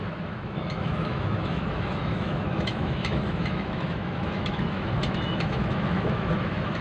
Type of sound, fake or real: fake